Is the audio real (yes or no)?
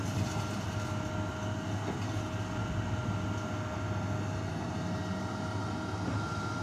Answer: yes